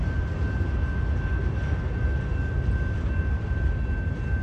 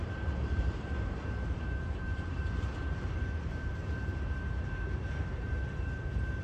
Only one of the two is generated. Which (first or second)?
second